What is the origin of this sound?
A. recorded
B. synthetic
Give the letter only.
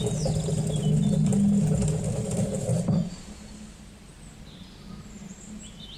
A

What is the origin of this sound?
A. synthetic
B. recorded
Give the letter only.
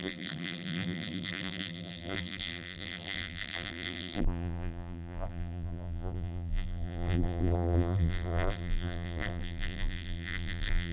A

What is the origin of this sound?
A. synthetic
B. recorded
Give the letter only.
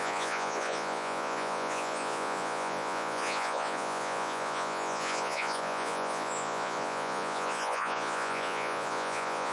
A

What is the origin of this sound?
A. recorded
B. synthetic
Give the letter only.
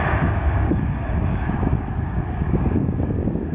B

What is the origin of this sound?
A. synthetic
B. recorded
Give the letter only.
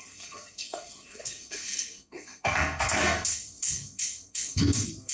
A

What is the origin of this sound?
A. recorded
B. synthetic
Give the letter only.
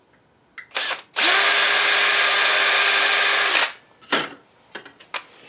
A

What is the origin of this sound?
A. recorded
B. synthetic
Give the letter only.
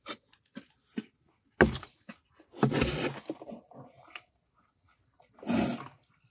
A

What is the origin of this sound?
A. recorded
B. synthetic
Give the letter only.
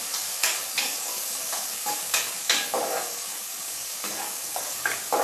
B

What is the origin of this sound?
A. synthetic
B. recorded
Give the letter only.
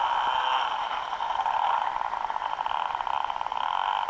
B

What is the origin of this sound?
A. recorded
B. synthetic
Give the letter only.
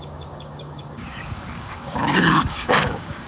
B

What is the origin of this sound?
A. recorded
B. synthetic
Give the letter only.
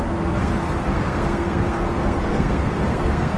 B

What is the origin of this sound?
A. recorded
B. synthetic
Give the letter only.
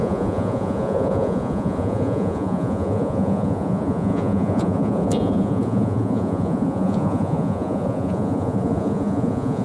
B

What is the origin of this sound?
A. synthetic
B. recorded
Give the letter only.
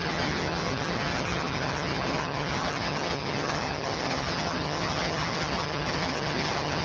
A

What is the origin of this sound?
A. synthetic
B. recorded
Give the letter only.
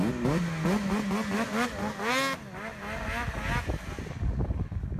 B